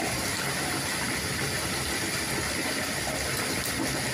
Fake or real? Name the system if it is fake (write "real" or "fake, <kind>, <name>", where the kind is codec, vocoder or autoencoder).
real